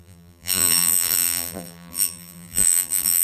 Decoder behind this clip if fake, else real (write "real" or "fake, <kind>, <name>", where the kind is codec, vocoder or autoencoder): fake, vocoder, BigVGAN v2